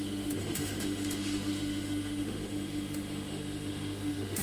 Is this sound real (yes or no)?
no